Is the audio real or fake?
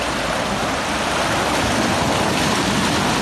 real